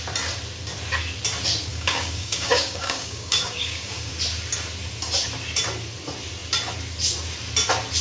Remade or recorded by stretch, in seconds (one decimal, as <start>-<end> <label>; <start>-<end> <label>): 0.0-1.7 recorded; 1.7-4.1 remade; 4.1-8.0 recorded